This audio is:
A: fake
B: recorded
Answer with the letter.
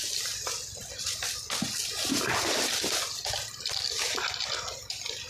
B